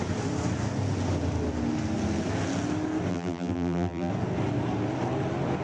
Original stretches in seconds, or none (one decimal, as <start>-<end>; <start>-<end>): 0.0-3.1; 4.1-5.6